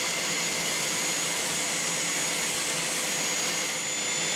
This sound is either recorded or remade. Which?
recorded